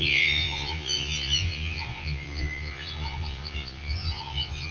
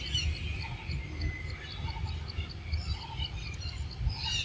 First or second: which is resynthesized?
first